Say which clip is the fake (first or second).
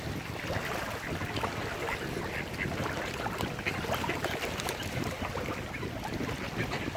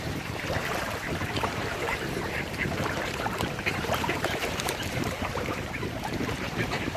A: second